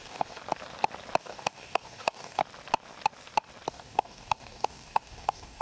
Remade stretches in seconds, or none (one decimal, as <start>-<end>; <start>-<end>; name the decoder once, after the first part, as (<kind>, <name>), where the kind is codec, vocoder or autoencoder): 0.0-0.4 (codec, DAC); 1.2-2.4; 3.7-5.6